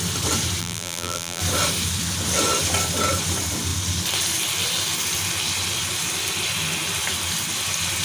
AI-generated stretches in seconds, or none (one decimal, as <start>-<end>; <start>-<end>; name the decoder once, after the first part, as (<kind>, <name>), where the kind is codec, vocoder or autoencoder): 0.6-1.4 (vocoder, BigVGAN v2)